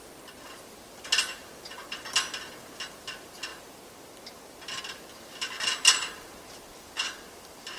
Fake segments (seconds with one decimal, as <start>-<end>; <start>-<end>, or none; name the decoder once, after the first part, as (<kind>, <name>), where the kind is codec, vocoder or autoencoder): none